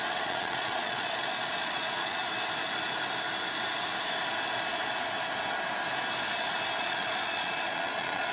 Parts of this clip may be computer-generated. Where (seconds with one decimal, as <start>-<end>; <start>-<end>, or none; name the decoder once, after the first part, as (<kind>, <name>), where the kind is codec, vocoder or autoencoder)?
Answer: 0.0-2.2 (vocoder, Vocos); 6.8-8.3